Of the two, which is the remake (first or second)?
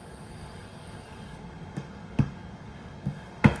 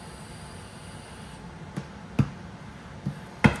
first